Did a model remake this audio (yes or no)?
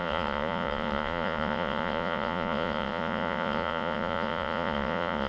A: yes